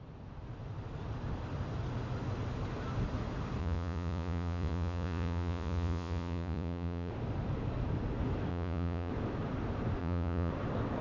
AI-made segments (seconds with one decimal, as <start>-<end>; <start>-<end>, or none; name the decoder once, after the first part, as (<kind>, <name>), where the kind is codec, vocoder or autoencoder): 3.6-7.1 (vocoder, Vocos); 8.5-9.1; 10.0-10.5